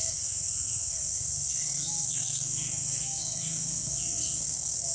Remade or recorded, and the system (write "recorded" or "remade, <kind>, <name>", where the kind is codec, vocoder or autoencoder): remade, codec, SNAC